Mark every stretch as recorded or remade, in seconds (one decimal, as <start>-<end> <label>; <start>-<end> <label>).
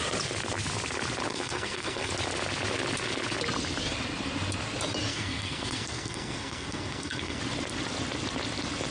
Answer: 0.0-1.3 recorded; 1.3-2.1 remade; 2.1-5.1 recorded; 5.1-7.4 remade; 7.4-8.9 recorded